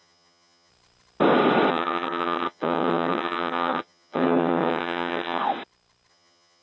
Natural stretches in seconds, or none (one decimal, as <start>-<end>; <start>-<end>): 0.7-1.7; 5.4-6.1